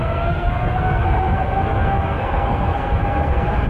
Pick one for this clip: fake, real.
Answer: fake